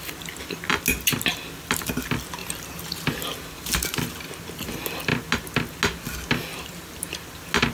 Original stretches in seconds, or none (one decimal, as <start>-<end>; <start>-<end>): 0.0-2.4; 3.1-6.5; 7.1-7.7